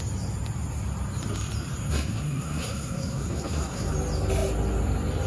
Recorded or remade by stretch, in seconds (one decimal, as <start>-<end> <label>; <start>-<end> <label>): 0.0-1.9 recorded; 1.9-3.9 remade; 3.9-5.3 recorded